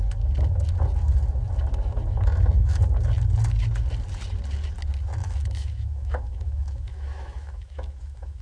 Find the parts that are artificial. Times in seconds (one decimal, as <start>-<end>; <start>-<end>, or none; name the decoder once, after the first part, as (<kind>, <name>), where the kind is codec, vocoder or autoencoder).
5.2-8.4 (autoencoder, DAC-VAE)